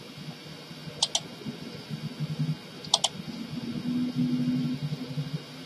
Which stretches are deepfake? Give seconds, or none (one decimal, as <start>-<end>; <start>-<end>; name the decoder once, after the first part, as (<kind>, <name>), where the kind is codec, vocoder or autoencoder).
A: 4.6-5.7 (vocoder, BigVGAN v2)